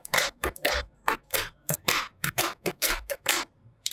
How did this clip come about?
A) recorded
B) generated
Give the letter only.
B